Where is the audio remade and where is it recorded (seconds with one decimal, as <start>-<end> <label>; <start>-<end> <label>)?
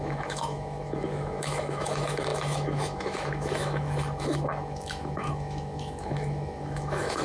0.0-7.2 remade